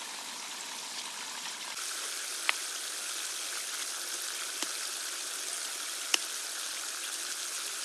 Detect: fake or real real